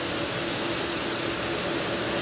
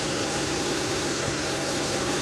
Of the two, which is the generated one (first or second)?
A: second